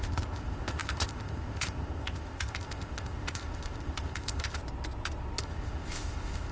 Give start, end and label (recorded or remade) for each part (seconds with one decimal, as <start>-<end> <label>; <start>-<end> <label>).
0.0-4.6 remade; 4.6-5.4 recorded; 5.4-6.5 remade